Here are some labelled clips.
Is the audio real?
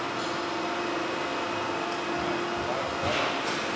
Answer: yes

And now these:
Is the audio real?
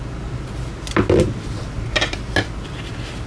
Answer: yes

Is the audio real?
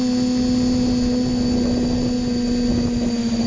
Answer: yes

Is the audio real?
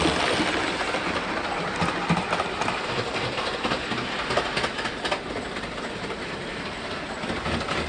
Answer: yes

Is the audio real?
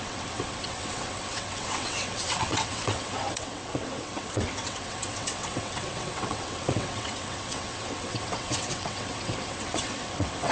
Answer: no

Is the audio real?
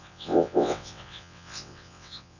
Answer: no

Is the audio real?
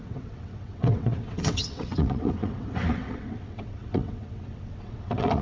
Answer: no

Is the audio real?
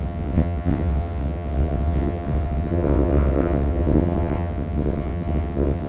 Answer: no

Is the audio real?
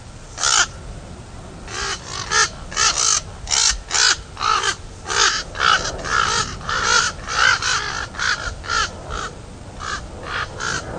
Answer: yes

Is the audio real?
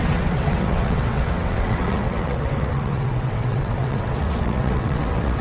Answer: no